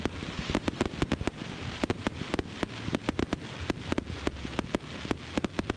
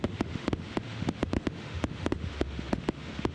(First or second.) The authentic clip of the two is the first